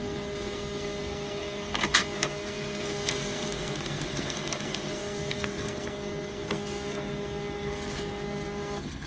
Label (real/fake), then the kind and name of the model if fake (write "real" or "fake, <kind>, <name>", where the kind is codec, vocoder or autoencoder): fake, codec, SNAC